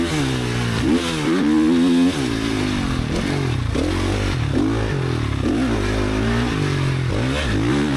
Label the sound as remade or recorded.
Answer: recorded